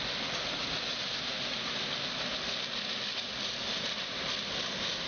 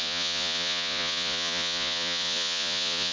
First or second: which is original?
first